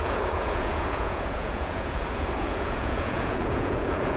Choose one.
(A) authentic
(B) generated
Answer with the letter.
B